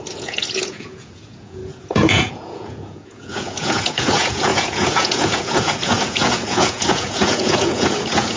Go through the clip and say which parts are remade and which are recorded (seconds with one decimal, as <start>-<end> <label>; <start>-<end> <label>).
0.0-8.4 remade